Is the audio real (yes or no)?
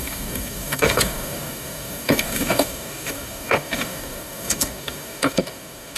no